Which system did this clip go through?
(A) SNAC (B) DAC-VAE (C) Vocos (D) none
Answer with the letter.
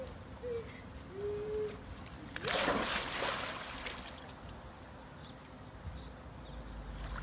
D